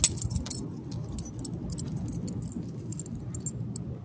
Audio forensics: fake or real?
real